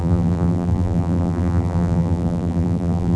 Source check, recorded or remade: remade